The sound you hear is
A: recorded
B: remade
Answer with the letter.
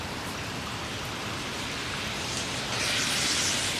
A